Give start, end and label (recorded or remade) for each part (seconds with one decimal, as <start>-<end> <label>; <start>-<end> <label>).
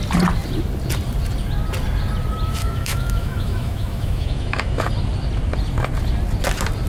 0.0-2.6 recorded; 2.6-4.9 remade; 4.9-6.9 recorded